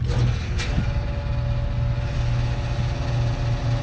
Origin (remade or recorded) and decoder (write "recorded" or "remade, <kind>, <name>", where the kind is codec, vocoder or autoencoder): recorded